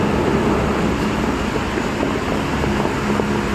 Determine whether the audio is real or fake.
real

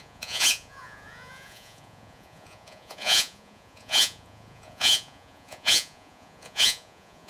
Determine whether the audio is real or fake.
fake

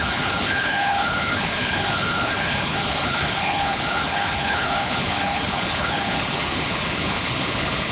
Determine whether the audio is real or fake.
fake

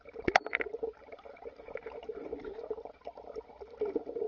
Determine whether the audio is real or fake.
real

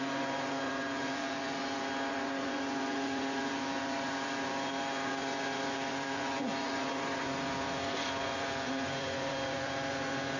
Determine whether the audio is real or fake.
fake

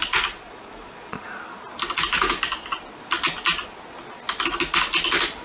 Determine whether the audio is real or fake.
real